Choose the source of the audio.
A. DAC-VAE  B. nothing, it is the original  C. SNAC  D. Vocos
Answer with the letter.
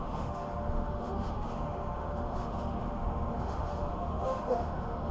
A